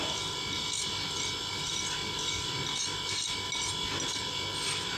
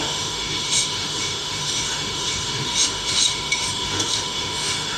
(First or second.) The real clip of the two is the first